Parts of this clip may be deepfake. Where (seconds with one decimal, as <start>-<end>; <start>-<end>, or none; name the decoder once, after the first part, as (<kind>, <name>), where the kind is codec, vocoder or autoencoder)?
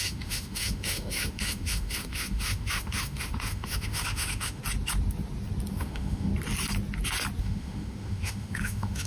0.0-4.6 (autoencoder, DAC-VAE); 5.7-6.3; 7.4-9.1